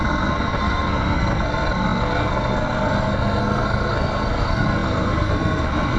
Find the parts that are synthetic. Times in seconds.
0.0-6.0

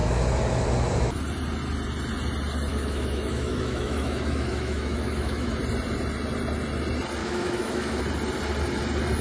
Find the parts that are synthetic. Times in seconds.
2.7-5.6; 7.2-8.0

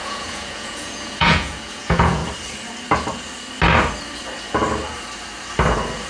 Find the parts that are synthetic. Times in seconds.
0.0-2.2

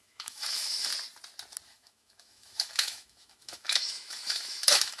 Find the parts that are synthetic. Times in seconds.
0.0-0.9; 1.7-5.0

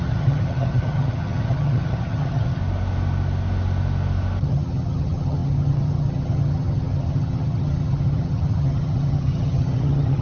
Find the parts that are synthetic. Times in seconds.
0.0-2.6; 4.4-10.2

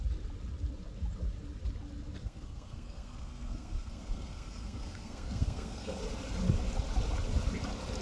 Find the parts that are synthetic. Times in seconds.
2.2-6.0

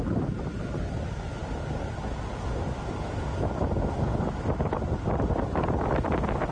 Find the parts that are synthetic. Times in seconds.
none

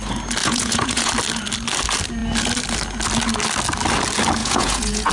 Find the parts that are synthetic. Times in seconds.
0.4-1.1; 4.4-5.1